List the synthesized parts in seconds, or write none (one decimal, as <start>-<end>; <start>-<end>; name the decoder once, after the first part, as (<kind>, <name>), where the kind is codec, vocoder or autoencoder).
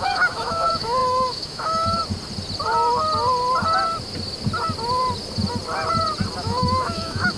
0.0-2.0 (autoencoder, DAC-VAE); 6.4-7.4